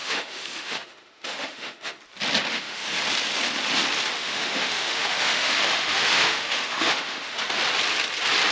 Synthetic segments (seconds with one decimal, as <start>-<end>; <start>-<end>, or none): 0.0-2.0; 2.5-3.0; 4.1-7.4